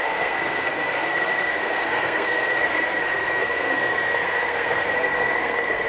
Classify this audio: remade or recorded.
remade